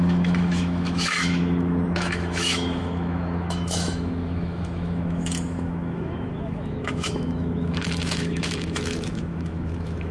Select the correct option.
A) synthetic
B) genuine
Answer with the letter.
A